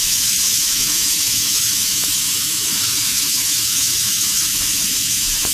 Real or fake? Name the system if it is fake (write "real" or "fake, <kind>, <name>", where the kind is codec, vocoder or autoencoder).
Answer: fake, autoencoder, DAC-VAE